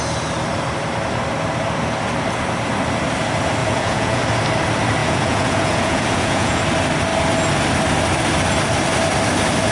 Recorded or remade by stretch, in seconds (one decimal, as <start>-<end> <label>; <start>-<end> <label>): 0.0-3.6 recorded; 3.6-4.2 remade; 4.2-5.0 recorded; 5.0-6.6 remade; 6.6-9.7 recorded